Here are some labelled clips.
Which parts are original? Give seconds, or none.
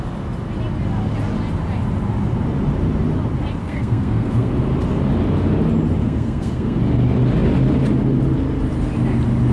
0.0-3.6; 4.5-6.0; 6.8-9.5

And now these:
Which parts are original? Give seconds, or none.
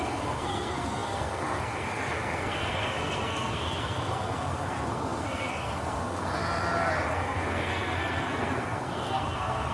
6.4-7.1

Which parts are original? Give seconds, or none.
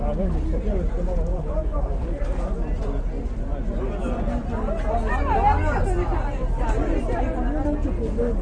0.0-1.3; 2.4-8.4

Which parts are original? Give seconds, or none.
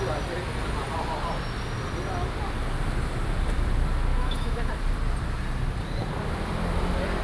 0.0-4.1; 4.7-7.2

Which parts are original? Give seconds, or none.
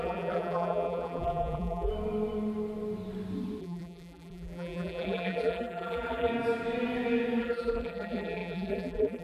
1.9-3.6; 6.3-7.4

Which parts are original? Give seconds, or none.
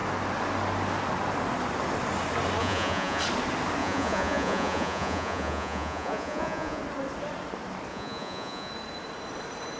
0.0-2.6; 3.2-3.8; 6.8-7.9; 8.7-9.8